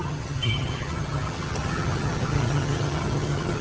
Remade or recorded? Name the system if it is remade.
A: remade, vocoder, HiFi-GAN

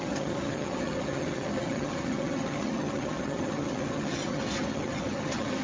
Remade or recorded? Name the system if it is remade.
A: remade, vocoder, HiFi-GAN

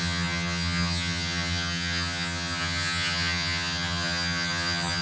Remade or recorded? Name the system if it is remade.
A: remade, vocoder, HiFi-GAN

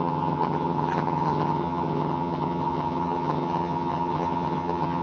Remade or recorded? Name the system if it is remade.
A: remade, vocoder, HiFi-GAN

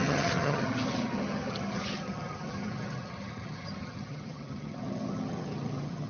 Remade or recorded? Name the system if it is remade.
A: remade, vocoder, HiFi-GAN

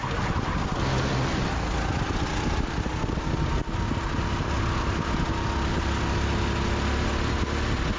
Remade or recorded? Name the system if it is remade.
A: recorded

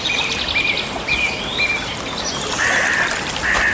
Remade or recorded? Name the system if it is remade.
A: recorded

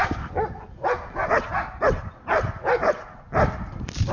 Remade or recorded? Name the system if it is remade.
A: recorded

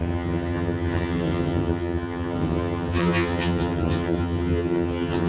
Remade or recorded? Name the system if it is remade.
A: remade, vocoder, HiFi-GAN